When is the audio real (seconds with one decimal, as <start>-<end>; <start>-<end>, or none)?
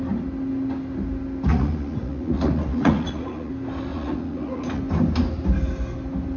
0.0-1.5; 3.5-3.9; 4.8-6.4